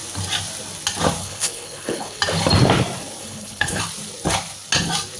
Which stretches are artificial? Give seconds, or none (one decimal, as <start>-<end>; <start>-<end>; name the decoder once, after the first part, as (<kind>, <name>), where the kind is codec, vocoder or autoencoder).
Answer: 1.2-2.2 (codec, HILCodec); 3.2-3.8